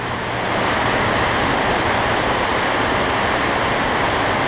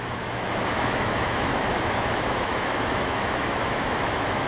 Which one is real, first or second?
first